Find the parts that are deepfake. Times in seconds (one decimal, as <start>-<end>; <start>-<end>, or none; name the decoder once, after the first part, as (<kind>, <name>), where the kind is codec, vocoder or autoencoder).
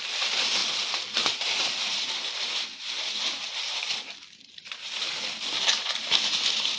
0.0-0.6 (vocoder, BigVGAN v2); 1.3-5.1; 5.7-6.8